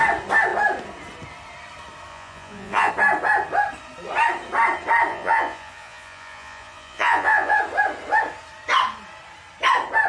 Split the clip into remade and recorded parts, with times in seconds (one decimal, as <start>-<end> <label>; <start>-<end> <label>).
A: 0.0-2.1 recorded; 2.1-2.9 remade; 2.9-5.1 recorded; 5.1-7.6 remade; 7.6-10.1 recorded